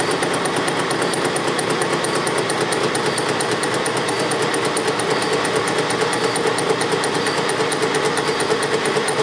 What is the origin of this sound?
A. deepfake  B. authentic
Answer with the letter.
B